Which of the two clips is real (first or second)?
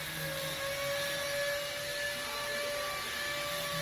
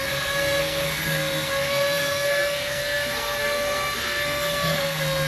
first